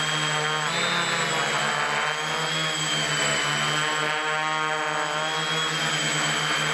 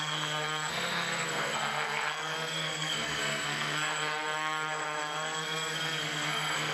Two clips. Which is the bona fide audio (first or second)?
first